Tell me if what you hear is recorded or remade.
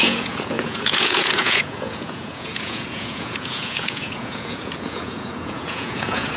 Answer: remade